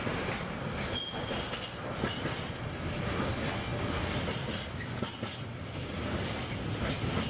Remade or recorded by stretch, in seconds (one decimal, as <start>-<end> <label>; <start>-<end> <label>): 0.0-7.3 recorded